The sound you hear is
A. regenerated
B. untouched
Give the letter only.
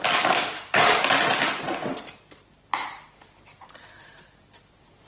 B